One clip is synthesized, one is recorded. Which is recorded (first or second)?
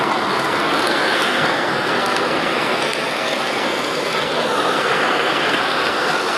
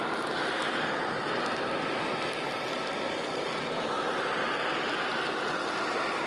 second